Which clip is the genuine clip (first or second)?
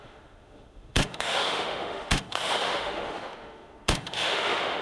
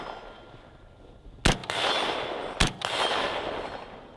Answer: second